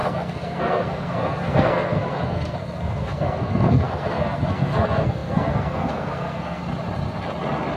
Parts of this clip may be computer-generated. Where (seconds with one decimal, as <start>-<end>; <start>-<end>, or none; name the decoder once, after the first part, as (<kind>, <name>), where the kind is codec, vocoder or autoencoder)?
0.0-6.6 (codec, SNAC)